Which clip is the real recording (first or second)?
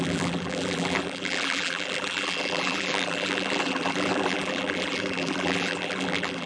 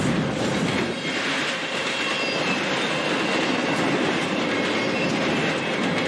second